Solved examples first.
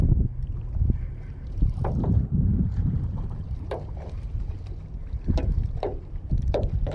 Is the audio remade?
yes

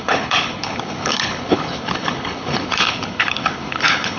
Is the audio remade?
yes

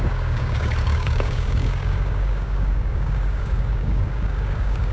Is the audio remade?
yes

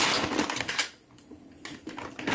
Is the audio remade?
no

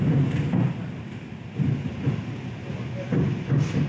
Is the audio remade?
no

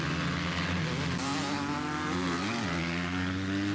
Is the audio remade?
no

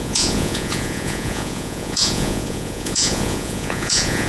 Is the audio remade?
yes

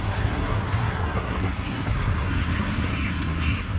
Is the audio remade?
yes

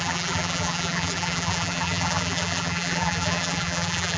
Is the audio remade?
yes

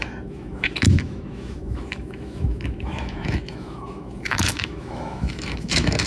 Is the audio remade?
yes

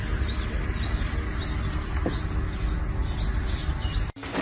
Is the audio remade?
no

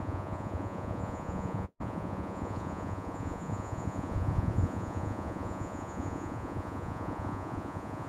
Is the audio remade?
yes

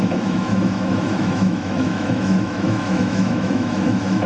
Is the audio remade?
yes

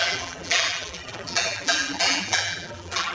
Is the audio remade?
yes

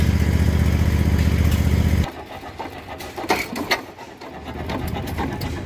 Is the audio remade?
no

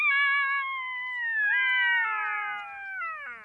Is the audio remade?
no